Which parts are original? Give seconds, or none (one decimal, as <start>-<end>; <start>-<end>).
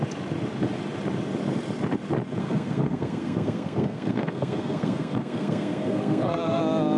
0.0-2.4; 6.6-7.0